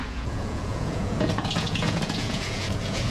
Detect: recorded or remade remade